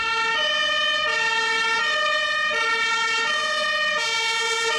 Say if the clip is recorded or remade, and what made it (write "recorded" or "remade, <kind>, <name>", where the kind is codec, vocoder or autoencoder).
recorded